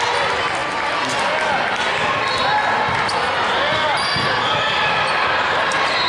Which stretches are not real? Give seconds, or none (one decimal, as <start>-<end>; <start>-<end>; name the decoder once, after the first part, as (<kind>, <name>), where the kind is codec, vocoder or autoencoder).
none